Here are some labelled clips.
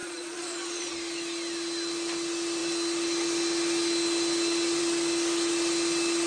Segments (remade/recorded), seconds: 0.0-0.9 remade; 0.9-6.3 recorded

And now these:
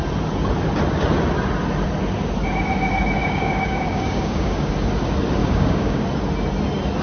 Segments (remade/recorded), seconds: 0.0-3.2 recorded; 3.2-4.7 remade; 4.7-5.4 recorded; 5.4-6.0 remade; 6.0-7.0 recorded

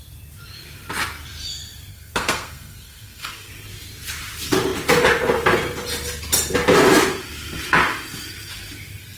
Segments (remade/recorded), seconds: 0.0-1.9 recorded; 1.9-3.5 remade; 3.5-9.2 recorded

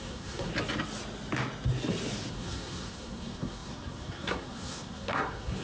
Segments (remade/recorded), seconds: 0.0-0.5 remade; 0.5-2.3 recorded; 2.3-5.6 remade

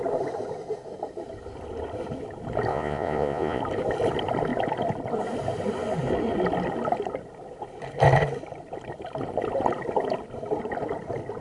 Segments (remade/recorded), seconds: 0.0-2.7 recorded; 2.7-3.6 remade; 3.6-11.4 recorded

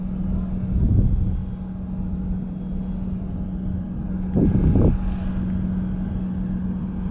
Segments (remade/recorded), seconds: 0.0-7.1 recorded